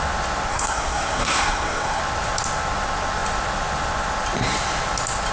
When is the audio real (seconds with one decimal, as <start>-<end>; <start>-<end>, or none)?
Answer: 0.0-0.5; 2.0-5.3